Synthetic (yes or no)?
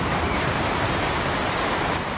yes